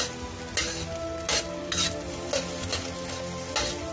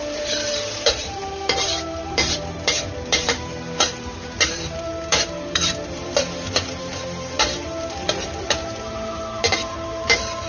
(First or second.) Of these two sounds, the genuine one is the first